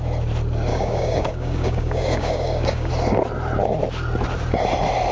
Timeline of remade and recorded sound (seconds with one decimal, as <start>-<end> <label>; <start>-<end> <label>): 0.0-0.7 recorded; 0.7-2.9 remade; 2.9-5.1 recorded